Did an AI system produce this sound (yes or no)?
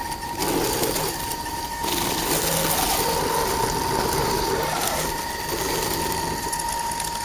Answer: no